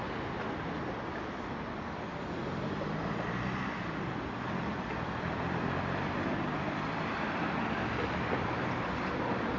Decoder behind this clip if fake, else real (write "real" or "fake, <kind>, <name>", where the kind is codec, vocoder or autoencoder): real